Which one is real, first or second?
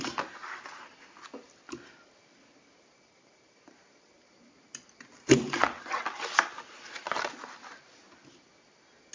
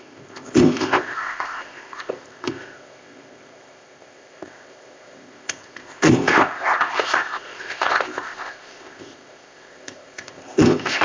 first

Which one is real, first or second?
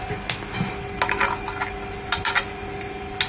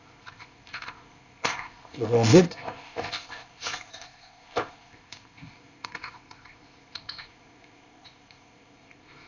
first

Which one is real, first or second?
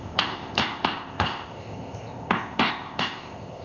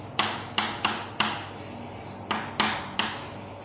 second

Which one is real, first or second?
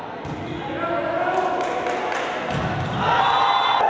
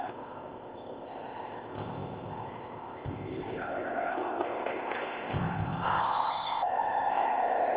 first